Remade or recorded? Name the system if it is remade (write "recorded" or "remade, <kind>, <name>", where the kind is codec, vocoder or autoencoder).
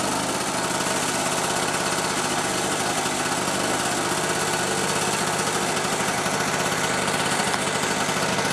recorded